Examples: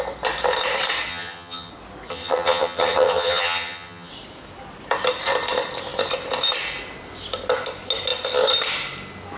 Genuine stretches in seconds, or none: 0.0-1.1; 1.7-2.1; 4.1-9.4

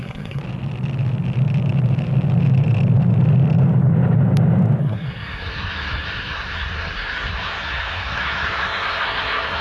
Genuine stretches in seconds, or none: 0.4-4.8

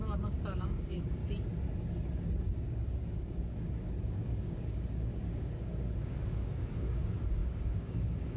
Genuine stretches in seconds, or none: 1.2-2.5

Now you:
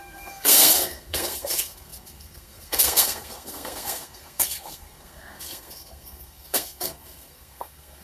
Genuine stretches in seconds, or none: none

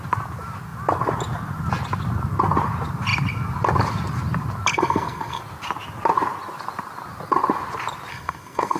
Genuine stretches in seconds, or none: 0.0-4.7; 5.4-8.1